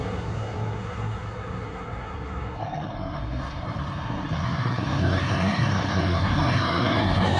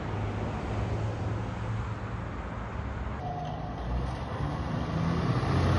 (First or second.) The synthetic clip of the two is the first